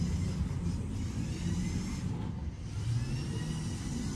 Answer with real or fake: real